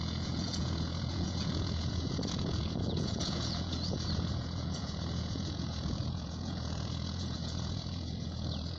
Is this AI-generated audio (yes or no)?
yes